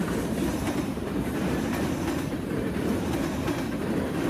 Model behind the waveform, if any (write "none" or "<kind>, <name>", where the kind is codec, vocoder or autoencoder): none